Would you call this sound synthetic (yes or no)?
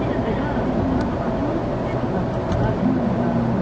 no